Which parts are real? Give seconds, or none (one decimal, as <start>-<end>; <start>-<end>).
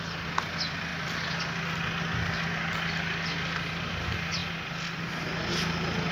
0.0-6.1